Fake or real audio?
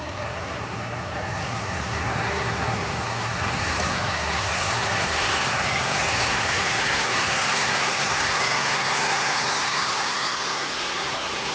fake